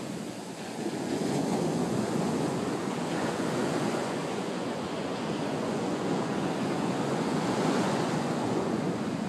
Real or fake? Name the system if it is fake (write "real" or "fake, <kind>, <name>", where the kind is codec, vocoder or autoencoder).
fake, vocoder, Vocos